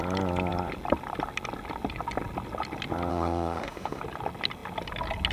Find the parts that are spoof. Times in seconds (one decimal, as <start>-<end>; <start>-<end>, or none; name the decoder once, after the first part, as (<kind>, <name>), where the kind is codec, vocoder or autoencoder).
3.1-4.0 (autoencoder, DAC-VAE)